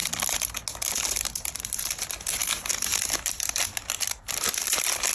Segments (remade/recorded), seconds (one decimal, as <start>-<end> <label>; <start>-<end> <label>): 0.0-5.1 recorded